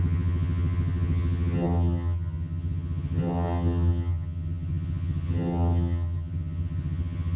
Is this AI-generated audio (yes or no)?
yes